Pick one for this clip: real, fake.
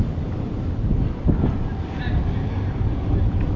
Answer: real